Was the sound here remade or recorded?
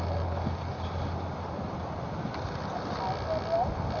recorded